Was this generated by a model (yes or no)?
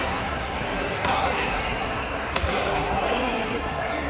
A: yes